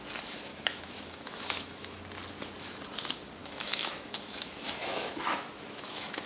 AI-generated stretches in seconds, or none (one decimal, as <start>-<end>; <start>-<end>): 0.5-2.0; 3.4-6.3